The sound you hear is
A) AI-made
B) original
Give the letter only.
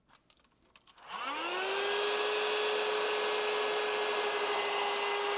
B